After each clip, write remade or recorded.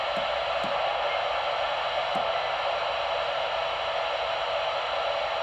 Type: recorded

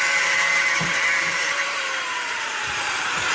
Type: remade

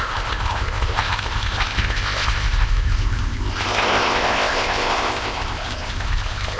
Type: remade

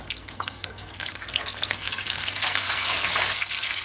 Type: remade